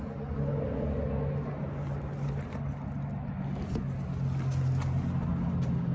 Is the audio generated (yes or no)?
no